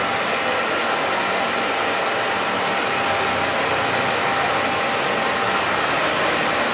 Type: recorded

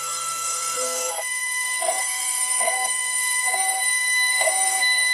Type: remade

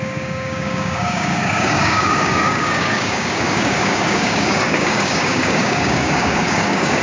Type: remade